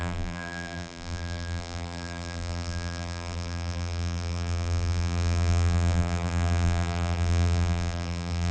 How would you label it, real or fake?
fake